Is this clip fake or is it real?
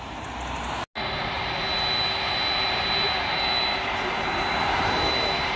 real